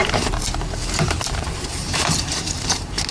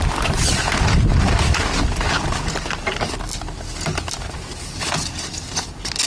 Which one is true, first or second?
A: second